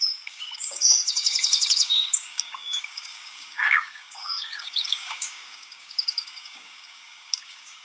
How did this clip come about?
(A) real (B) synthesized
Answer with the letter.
B